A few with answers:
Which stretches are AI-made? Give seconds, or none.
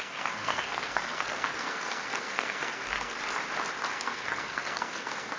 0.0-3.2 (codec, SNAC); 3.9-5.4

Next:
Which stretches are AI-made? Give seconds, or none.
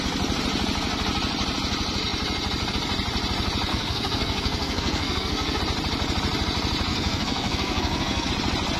3.7-5.6 (codec, SNAC); 6.9-8.3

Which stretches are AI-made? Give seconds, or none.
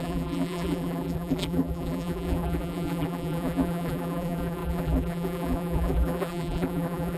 0.0-7.2 (vocoder, BigVGAN v2)